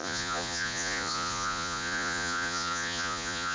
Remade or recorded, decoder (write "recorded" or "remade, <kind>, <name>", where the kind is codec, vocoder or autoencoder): remade, vocoder, Vocos